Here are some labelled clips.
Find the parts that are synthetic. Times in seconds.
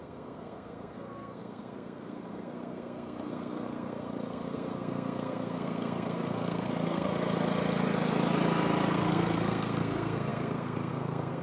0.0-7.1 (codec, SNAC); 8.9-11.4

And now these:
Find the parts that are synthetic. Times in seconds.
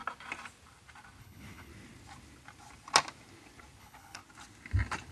1.2-1.7 (codec, HILCodec); 3.8-4.2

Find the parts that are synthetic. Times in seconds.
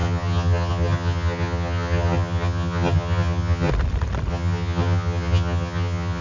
0.0-3.7 (vocoder, HiFi-GAN); 4.3-6.2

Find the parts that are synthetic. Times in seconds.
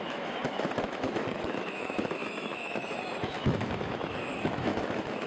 0.0-5.3 (autoencoder, DAC-VAE)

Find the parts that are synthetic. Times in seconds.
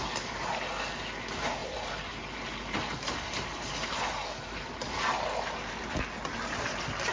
none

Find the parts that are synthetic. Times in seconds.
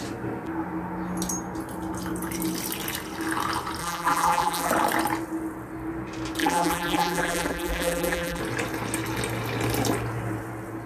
3.8-4.7 (vocoder, BigVGAN v2); 6.4-8.4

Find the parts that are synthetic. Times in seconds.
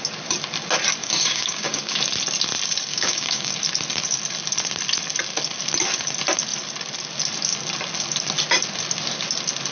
1.0-2.0 (codec, DAC); 2.9-3.5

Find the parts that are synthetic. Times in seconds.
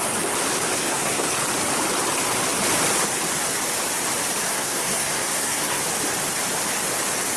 0.8-1.3 (codec, SNAC); 4.5-5.8